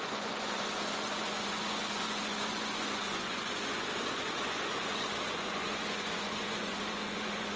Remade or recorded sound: remade